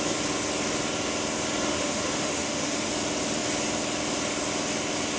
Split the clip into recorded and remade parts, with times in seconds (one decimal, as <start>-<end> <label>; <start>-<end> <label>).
0.0-1.7 recorded; 1.7-2.9 remade; 2.9-5.2 recorded

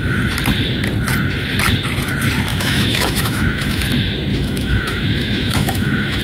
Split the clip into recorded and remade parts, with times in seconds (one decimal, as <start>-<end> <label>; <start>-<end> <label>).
0.0-2.5 recorded; 2.5-3.8 remade; 3.8-4.3 recorded; 4.3-6.2 remade

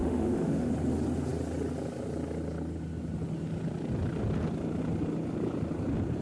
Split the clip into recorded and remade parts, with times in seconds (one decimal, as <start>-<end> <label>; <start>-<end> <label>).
0.0-0.7 remade; 0.7-6.2 recorded

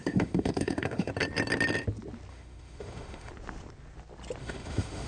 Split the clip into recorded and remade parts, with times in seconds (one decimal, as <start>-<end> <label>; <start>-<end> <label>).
0.0-1.1 remade; 1.1-2.3 recorded; 2.3-3.3 remade; 3.3-4.4 recorded; 4.4-5.1 remade

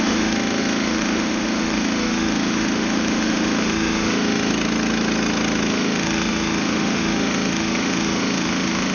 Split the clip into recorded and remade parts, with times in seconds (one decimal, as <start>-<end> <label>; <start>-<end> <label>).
0.0-4.5 remade; 4.5-5.7 recorded; 5.7-8.9 remade

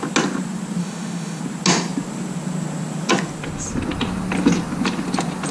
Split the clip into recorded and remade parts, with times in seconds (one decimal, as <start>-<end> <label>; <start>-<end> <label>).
0.0-0.8 recorded; 0.8-1.4 remade; 1.4-5.5 recorded

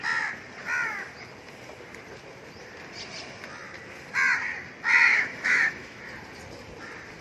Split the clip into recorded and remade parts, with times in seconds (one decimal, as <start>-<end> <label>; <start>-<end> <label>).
0.0-5.1 recorded; 5.1-6.0 remade; 6.0-7.2 recorded

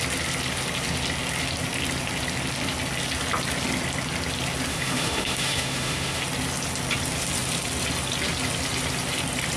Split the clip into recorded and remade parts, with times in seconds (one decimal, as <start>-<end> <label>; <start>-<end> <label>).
0.0-4.7 recorded; 4.7-6.2 remade; 6.2-9.6 recorded